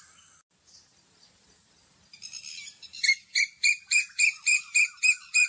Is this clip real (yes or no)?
yes